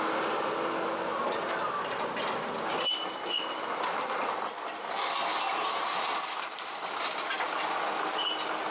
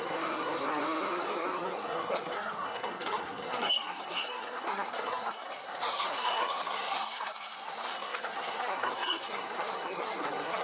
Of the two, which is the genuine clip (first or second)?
first